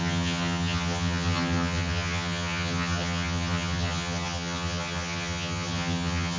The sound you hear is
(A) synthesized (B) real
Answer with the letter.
A